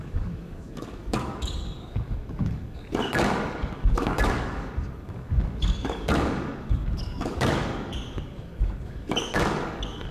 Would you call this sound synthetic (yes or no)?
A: yes